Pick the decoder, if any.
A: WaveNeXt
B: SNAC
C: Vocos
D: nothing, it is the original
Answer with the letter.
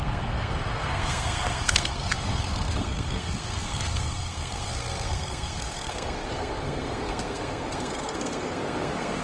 B